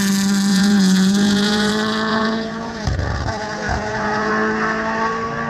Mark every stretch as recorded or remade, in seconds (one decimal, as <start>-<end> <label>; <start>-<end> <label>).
0.0-0.5 recorded; 0.5-1.7 remade; 1.7-2.1 recorded; 2.1-4.3 remade; 4.3-5.5 recorded